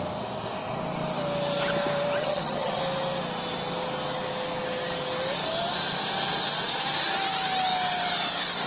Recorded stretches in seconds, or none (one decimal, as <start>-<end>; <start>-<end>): 0.0-2.2; 2.8-8.7